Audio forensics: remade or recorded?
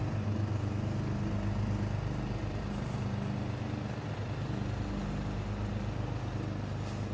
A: recorded